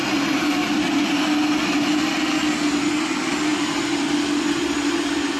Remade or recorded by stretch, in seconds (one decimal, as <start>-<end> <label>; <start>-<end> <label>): 0.0-3.5 recorded; 3.5-4.2 remade; 4.2-5.4 recorded